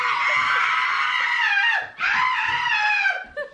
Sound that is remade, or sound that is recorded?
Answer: recorded